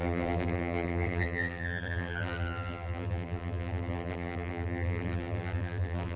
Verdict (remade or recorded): remade